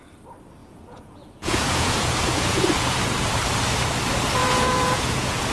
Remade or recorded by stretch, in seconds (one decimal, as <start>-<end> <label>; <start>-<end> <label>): 0.0-0.6 recorded; 0.6-3.3 remade; 3.3-4.4 recorded; 4.4-5.5 remade